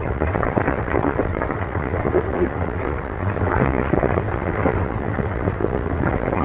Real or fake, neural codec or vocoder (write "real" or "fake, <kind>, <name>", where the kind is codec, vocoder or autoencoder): fake, vocoder, WaveNeXt